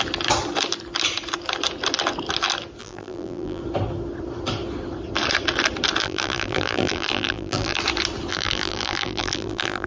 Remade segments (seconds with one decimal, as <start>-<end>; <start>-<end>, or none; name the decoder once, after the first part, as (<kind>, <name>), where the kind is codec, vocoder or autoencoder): 2.8-3.6 (vocoder, BigVGAN v2); 6.0-7.8; 8.3-9.9